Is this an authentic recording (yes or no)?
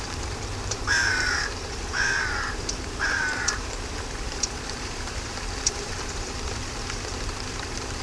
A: no